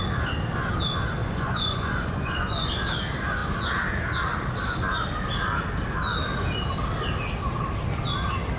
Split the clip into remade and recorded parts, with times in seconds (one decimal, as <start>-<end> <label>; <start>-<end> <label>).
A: 0.0-1.2 recorded; 1.2-2.7 remade; 2.7-8.6 recorded